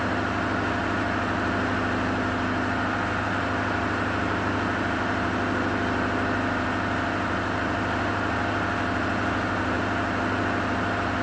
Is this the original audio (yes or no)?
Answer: yes